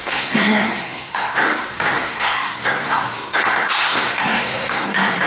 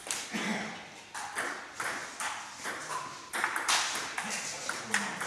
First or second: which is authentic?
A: second